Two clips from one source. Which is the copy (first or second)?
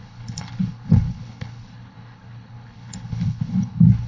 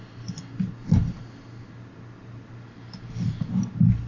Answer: first